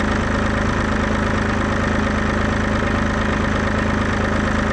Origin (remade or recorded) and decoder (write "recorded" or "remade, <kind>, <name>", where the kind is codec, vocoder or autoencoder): recorded